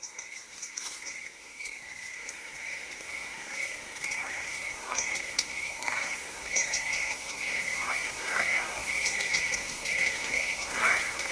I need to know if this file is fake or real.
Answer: fake